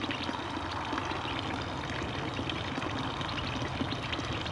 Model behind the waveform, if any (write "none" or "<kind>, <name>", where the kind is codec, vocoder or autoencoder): none